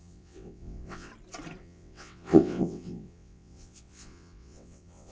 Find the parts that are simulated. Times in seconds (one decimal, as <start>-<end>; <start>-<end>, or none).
0.0-1.1; 1.6-5.1